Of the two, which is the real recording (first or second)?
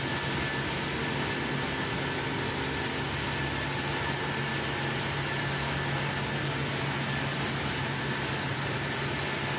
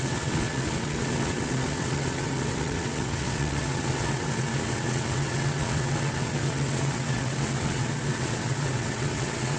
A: first